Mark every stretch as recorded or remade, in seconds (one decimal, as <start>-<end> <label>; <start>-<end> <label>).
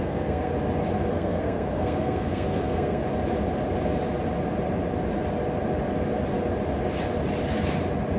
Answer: 0.0-0.5 remade; 0.5-1.1 recorded; 1.1-3.0 remade; 3.0-8.2 recorded